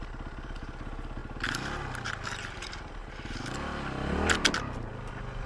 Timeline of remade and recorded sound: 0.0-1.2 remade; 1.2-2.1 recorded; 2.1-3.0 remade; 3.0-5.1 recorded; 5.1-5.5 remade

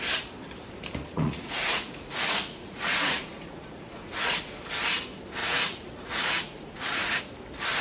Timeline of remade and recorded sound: 0.0-1.1 recorded; 1.1-4.3 remade; 4.3-5.4 recorded; 5.4-7.2 remade; 7.2-7.8 recorded

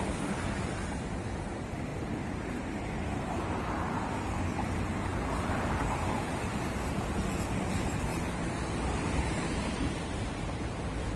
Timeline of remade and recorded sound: 0.0-1.9 recorded; 1.9-4.4 remade; 4.4-8.1 recorded; 8.1-10.7 remade; 10.7-11.2 recorded

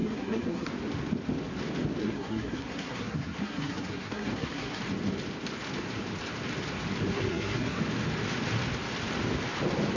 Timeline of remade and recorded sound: 0.0-0.7 remade; 0.7-2.0 recorded; 2.0-4.8 remade; 4.8-7.1 recorded; 7.1-7.8 remade; 7.8-10.0 recorded

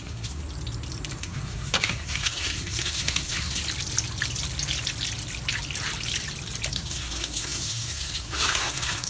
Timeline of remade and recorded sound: 0.0-0.4 remade; 0.4-1.2 recorded; 1.2-3.6 remade; 3.6-6.7 recorded; 6.7-9.1 remade

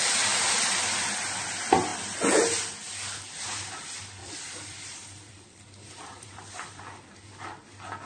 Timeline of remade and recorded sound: 0.0-4.2 recorded; 4.2-6.8 remade; 6.8-8.1 recorded